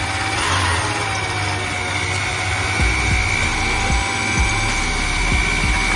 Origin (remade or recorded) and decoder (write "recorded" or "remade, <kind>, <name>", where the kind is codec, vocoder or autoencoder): recorded